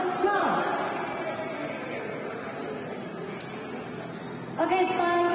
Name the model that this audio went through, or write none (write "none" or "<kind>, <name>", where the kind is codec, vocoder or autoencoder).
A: none